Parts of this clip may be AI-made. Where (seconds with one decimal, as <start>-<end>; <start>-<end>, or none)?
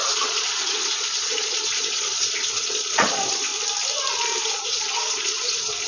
0.0-3.5; 4.4-5.9